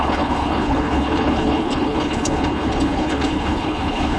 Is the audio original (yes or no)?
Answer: no